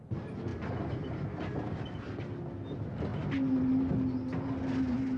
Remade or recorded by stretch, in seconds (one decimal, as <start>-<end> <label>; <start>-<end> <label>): 0.0-5.2 recorded